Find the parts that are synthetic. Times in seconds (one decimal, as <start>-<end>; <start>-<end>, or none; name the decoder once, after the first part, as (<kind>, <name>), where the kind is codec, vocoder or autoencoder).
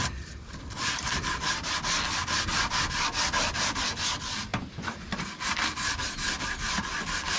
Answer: 0.0-1.4 (vocoder, BigVGAN v2); 2.2-2.8; 4.5-7.4